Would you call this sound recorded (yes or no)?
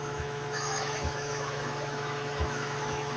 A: no